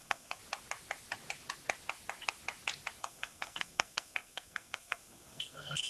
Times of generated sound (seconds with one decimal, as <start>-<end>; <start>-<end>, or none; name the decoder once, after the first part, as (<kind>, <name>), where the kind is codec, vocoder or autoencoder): 0.0-0.4 (codec, SNAC); 3.0-5.9